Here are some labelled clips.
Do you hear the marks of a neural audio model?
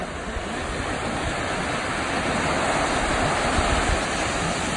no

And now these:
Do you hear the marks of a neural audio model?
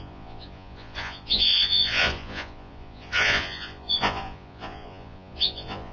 yes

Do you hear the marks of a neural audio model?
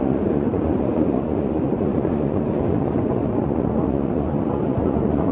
yes